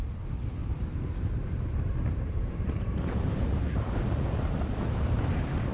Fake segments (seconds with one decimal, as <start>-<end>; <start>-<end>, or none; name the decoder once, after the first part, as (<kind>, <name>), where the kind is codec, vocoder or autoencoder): 0.6-4.0 (vocoder, BigVGAN v2)